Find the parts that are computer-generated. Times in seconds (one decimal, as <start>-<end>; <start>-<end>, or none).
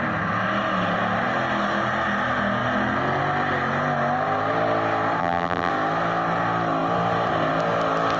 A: 5.2-5.7